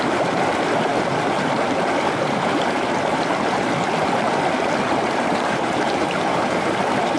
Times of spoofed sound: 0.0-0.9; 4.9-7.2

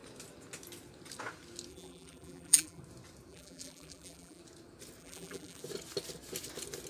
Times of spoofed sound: 1.7-2.8; 3.3-4.4; 5.0-5.6

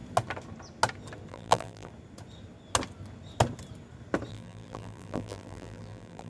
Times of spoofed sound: 1.3-1.9; 4.3-6.3

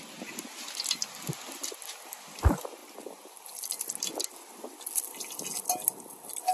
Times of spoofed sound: none